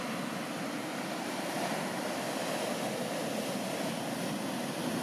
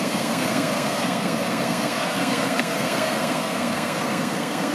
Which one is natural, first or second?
first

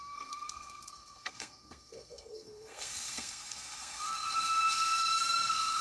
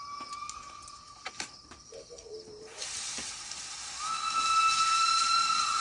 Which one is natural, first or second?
second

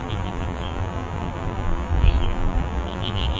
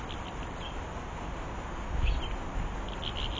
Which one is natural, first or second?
second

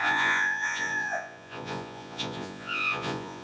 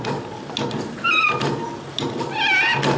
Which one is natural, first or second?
second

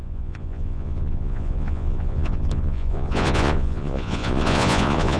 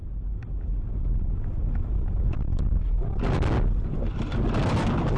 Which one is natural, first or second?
second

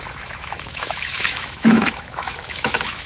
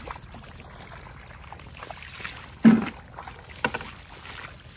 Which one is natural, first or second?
second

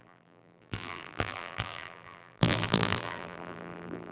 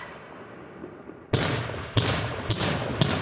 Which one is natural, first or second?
second